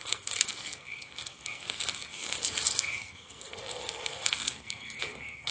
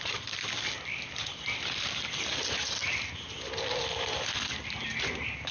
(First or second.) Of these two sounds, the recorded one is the second